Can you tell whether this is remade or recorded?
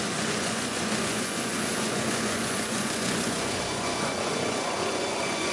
remade